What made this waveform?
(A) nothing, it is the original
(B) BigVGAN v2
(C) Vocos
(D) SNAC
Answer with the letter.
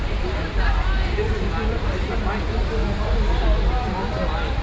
A